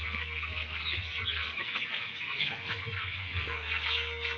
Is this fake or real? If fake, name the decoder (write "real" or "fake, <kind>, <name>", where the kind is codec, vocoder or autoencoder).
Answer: fake, codec, SNAC